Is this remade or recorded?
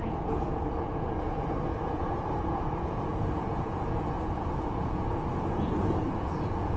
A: remade